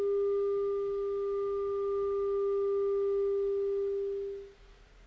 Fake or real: real